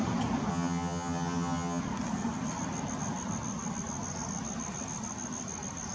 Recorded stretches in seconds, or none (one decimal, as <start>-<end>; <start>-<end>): 0.0-0.5; 1.8-5.9